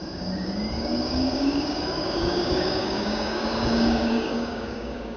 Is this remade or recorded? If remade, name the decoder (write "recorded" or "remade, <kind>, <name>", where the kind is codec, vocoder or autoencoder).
remade, codec, DAC